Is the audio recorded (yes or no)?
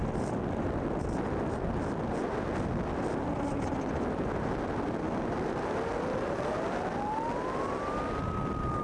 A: yes